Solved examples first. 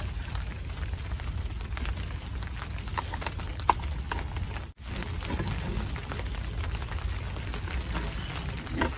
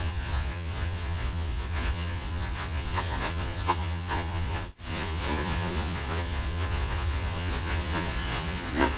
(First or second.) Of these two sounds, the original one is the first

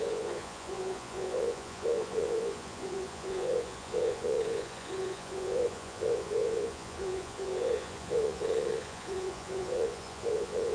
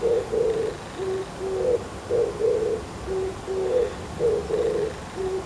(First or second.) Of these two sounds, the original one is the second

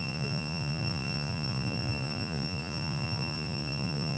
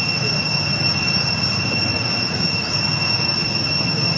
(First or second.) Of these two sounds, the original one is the second